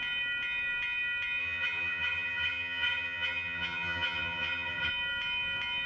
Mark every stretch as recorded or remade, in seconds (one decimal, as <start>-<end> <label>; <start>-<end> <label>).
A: 0.0-1.4 recorded; 1.4-4.9 remade; 4.9-5.9 recorded